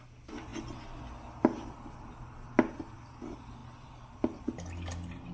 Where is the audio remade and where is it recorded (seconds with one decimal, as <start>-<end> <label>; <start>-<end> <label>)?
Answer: 0.0-5.3 recorded